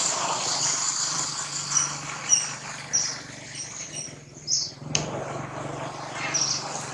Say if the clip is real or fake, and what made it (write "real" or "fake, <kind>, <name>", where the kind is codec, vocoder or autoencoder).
real